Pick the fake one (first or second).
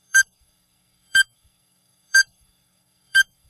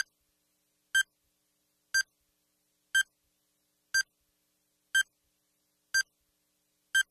first